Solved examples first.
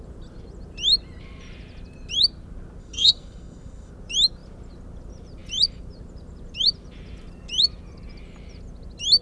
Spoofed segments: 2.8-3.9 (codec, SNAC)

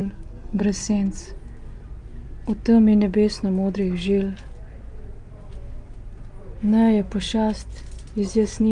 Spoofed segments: 0.0-0.6 (codec, DAC)

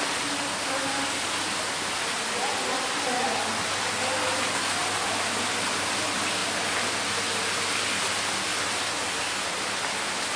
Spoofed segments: none